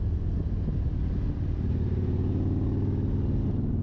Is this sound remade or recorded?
recorded